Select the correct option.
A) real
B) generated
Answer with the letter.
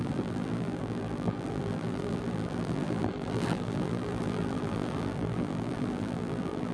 B